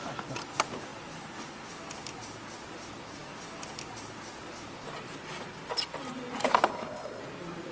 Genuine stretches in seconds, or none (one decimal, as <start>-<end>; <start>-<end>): 0.0-6.7; 7.2-7.7